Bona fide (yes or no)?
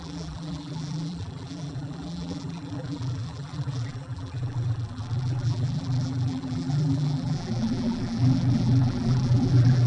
no